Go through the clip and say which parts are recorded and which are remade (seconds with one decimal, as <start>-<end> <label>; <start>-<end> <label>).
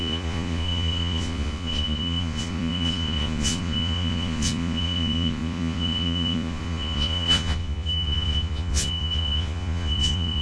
0.0-10.4 remade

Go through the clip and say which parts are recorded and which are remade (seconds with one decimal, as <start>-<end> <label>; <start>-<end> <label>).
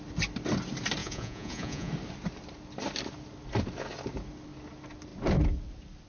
0.0-1.0 recorded; 1.0-1.9 remade; 1.9-6.1 recorded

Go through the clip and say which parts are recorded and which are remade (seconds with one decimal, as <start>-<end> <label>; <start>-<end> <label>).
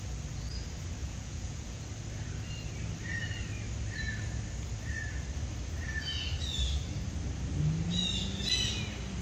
0.0-1.0 recorded; 1.0-1.8 remade; 1.8-9.2 recorded